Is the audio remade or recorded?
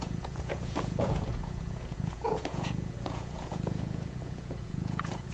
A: remade